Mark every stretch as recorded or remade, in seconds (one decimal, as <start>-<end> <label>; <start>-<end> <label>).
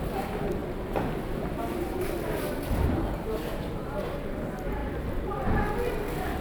0.0-6.4 recorded